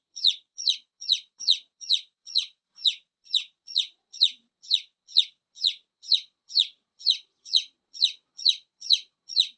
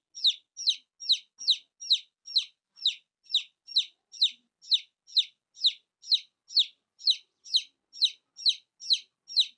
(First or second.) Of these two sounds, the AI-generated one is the first